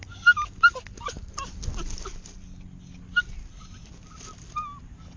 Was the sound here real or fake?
real